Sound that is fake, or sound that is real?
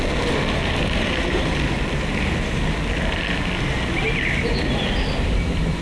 real